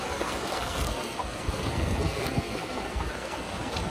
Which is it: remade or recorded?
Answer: remade